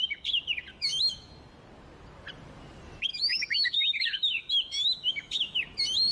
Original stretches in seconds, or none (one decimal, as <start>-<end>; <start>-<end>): 0.0-0.7; 1.3-3.1; 5.6-6.1